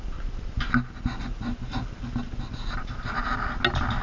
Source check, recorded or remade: recorded